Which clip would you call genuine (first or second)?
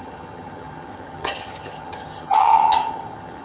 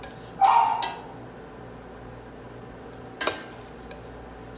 second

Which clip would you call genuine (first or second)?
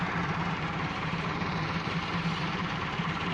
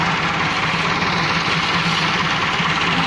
second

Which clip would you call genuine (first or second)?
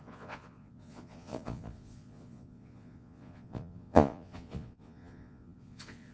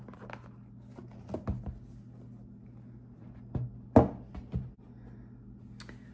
second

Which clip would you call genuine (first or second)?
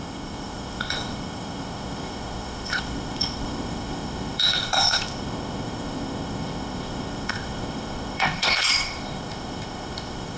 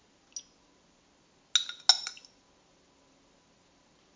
second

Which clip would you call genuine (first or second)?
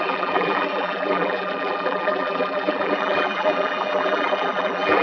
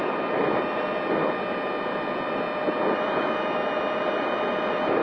second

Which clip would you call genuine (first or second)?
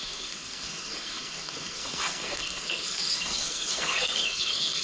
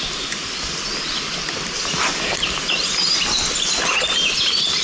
second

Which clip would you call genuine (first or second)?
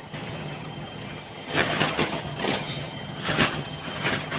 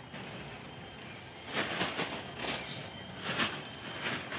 second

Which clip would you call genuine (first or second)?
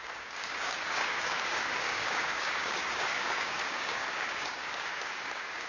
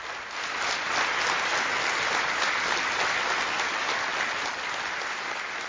second